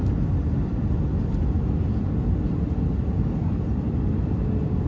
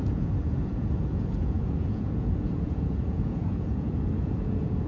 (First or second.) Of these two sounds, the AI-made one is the second